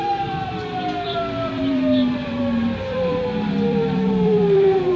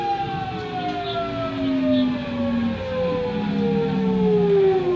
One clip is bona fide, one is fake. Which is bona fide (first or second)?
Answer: second